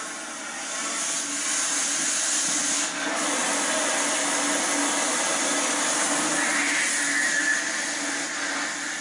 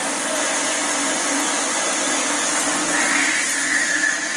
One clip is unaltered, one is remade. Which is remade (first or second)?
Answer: second